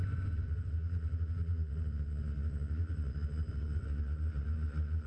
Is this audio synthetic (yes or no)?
yes